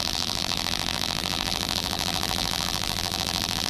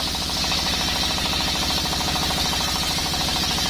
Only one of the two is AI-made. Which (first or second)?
first